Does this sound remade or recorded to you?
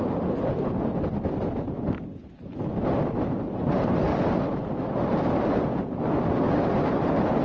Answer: recorded